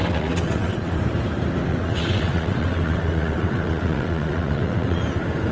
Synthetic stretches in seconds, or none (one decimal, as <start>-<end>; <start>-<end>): 0.0-1.0; 1.7-5.0